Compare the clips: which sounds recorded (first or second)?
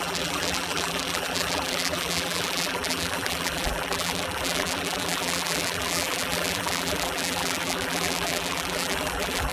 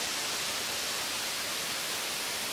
second